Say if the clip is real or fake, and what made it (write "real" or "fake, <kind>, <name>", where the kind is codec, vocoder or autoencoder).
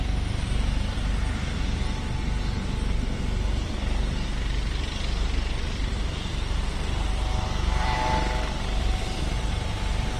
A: fake, vocoder, BigVGAN v2